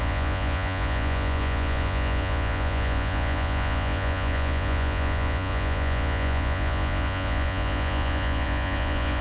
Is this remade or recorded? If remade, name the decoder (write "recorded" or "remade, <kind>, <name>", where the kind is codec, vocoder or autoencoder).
remade, vocoder, Vocos